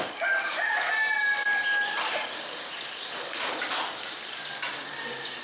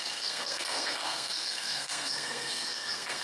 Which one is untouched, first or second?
first